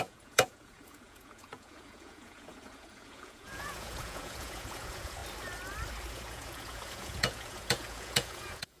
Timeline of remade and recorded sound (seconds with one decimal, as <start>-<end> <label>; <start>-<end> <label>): 0.0-5.2 remade; 5.2-6.1 recorded; 6.1-8.8 remade